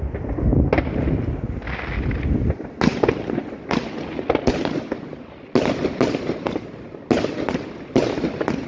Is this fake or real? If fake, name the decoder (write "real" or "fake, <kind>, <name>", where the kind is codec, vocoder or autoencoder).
real